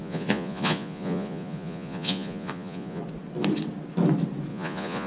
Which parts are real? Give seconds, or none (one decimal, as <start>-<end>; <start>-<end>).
3.0-4.5